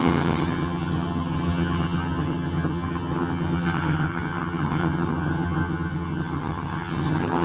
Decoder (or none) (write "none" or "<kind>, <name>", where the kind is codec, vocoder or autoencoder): vocoder, HiFi-GAN